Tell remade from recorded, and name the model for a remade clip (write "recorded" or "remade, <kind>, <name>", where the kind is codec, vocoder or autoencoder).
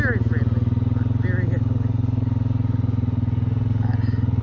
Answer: recorded